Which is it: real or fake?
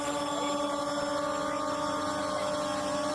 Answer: real